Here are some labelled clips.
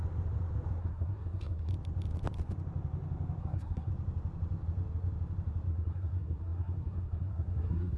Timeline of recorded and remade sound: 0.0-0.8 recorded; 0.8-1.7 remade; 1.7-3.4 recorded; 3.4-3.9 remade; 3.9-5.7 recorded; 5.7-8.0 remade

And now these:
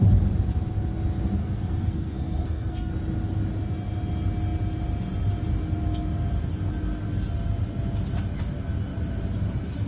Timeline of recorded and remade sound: 0.0-1.4 recorded; 1.4-2.9 remade; 2.9-9.9 recorded

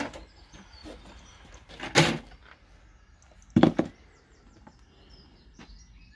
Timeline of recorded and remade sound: 0.0-0.8 recorded; 0.8-1.5 remade; 1.5-6.2 recorded